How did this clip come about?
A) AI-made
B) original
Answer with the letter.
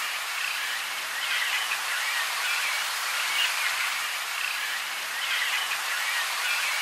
A